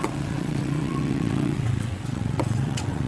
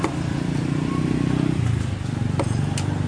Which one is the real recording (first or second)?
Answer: second